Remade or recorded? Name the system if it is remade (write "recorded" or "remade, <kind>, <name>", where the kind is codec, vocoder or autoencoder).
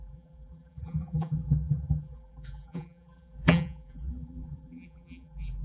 remade, vocoder, BigVGAN v2